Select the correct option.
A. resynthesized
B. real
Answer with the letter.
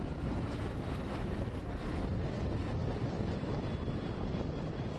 B